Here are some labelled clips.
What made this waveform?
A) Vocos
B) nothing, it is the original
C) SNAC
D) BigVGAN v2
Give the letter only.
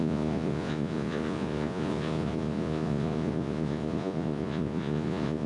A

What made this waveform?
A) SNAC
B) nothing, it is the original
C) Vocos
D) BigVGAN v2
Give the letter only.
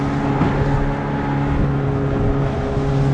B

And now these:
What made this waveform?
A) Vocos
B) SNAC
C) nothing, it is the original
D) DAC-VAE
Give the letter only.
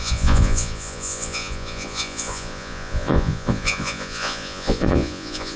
A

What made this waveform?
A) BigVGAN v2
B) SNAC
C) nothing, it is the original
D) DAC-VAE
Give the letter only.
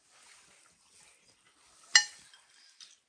C